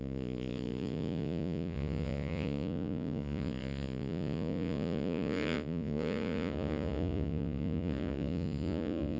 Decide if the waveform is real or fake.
fake